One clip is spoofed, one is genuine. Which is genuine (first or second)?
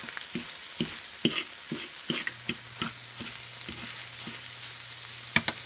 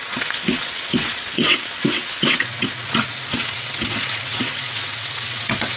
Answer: first